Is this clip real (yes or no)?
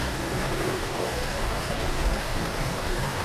no